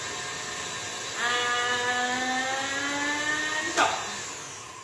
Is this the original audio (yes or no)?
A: yes